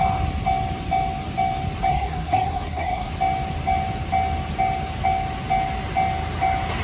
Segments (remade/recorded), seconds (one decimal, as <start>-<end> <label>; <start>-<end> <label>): 0.0-1.9 recorded; 1.9-3.1 remade; 3.1-6.8 recorded